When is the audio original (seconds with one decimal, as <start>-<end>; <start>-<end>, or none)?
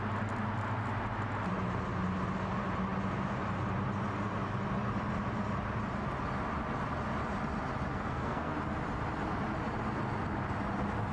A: 0.0-7.9; 8.5-11.1